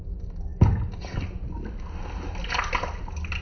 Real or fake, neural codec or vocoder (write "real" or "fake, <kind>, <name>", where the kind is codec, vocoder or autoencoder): real